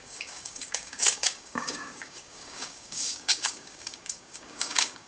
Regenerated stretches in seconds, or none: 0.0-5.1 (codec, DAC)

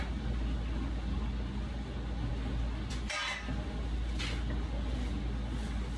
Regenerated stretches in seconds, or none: none